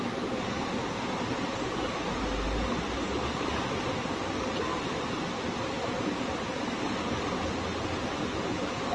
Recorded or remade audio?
recorded